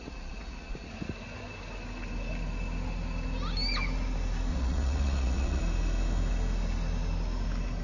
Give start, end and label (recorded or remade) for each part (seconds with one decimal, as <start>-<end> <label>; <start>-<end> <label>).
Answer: 0.0-0.9 remade; 0.9-4.5 recorded; 4.5-5.6 remade; 5.6-7.8 recorded